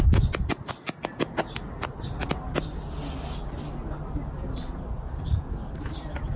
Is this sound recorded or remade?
recorded